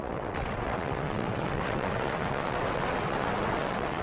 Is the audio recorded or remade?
remade